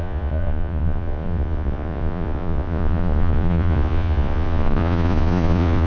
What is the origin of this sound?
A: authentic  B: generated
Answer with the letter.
B